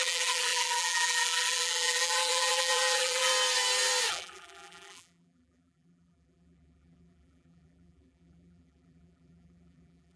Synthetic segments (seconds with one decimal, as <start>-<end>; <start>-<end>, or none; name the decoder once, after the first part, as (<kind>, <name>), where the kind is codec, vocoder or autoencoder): 0.0-3.3 (vocoder, BigVGAN v2); 4.1-10.2